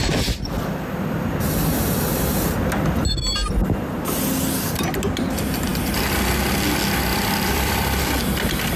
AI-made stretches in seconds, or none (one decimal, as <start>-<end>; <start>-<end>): 0.0-0.6; 7.1-8.1